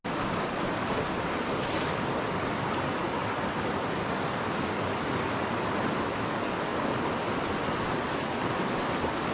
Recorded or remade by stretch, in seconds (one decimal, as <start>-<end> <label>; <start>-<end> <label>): 0.0-9.3 recorded